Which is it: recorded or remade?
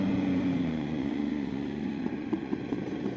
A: remade